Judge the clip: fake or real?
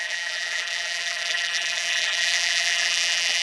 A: fake